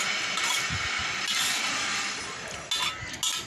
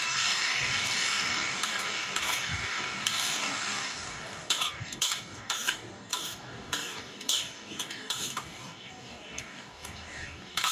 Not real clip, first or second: second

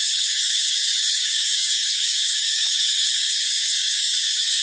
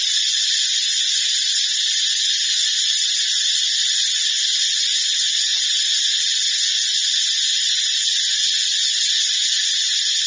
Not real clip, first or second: first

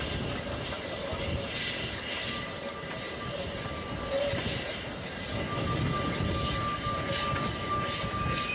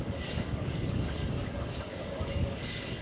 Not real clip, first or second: second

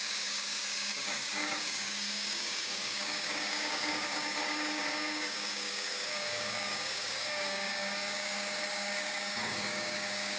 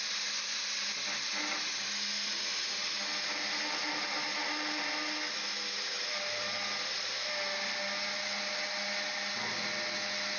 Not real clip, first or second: first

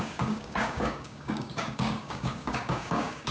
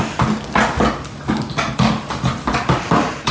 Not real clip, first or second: first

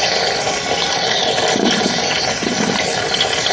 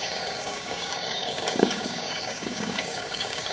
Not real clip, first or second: second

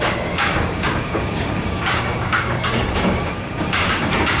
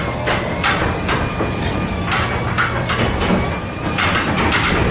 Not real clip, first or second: first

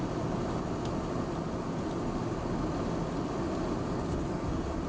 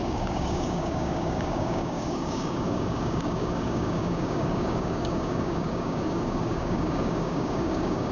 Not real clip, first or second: second